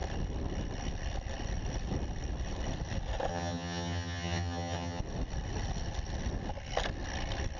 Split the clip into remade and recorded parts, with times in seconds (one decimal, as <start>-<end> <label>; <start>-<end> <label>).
0.0-3.3 recorded; 3.3-5.0 remade; 5.0-7.6 recorded